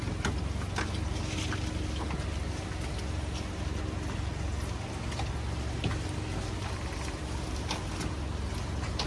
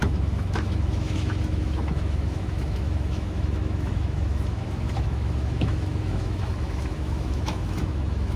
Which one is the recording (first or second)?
first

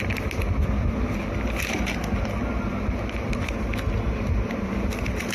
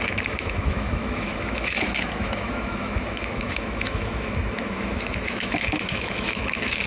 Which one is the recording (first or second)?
first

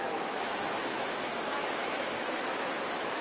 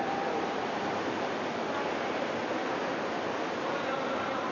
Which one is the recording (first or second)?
second